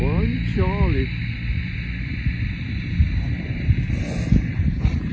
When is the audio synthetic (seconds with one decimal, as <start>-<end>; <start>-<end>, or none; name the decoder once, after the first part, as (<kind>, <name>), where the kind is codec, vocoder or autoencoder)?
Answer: none